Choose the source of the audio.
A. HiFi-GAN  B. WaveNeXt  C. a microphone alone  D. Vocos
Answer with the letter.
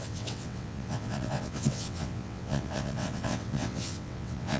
B